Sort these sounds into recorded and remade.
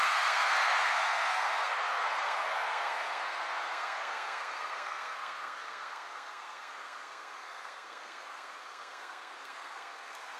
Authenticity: remade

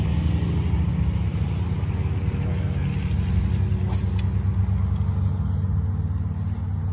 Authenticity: recorded